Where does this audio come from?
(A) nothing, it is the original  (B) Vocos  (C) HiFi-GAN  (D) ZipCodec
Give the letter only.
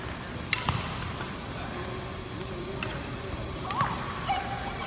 A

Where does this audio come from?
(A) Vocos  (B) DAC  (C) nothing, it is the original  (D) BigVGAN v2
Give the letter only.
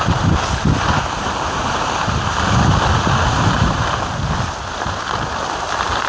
C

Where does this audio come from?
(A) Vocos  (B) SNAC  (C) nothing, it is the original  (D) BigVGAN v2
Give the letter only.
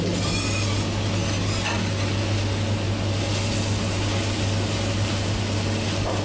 C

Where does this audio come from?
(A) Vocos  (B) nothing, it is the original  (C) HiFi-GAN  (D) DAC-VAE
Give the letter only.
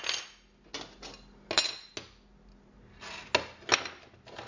B